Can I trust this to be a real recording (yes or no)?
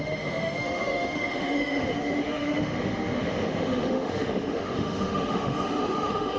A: no